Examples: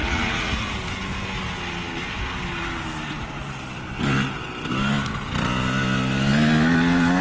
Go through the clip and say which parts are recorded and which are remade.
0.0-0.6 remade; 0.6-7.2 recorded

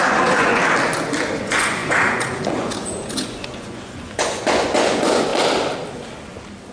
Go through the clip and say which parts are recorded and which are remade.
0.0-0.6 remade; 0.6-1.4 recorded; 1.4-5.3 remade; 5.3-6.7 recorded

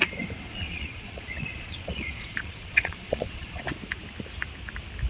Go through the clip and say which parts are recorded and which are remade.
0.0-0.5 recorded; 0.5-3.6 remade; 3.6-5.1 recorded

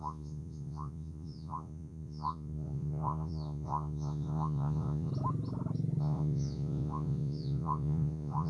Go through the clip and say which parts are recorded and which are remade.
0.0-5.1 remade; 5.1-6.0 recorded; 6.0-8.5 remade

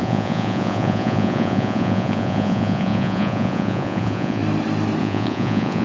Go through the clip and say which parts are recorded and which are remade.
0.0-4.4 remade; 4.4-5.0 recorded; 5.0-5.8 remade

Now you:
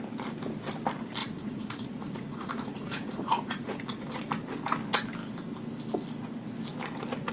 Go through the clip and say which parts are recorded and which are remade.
0.0-1.2 recorded; 1.2-4.2 remade; 4.2-7.3 recorded

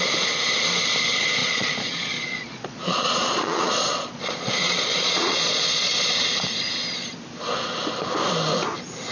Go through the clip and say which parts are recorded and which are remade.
0.0-1.4 recorded; 1.4-6.1 remade; 6.1-9.1 recorded